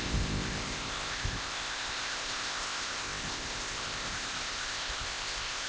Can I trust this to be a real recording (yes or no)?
no